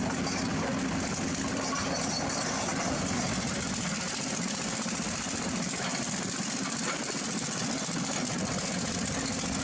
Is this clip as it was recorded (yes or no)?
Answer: yes